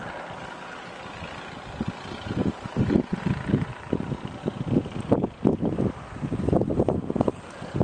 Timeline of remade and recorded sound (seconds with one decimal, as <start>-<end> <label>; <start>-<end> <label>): 0.0-2.4 recorded; 2.4-3.2 remade; 3.2-3.7 recorded; 3.7-4.4 remade; 4.4-7.8 recorded